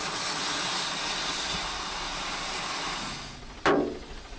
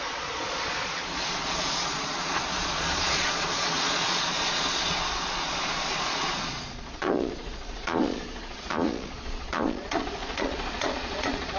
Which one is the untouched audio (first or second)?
first